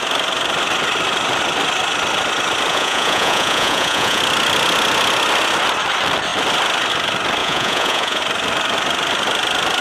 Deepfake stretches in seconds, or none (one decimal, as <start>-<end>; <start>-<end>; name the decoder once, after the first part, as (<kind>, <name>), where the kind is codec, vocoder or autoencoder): 2.7-4.2 (vocoder, Vocos); 7.4-8.2